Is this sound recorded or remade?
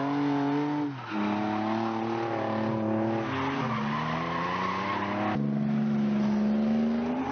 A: recorded